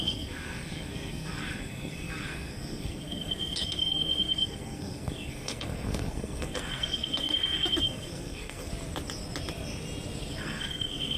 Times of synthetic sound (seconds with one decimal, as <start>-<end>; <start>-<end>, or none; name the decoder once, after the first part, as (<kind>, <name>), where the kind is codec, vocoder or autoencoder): 0.0-8.7 (codec, SNAC); 10.4-11.2